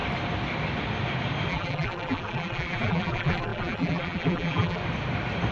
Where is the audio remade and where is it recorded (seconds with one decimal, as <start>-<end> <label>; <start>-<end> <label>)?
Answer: 0.0-1.5 recorded; 1.5-4.8 remade; 4.8-5.5 recorded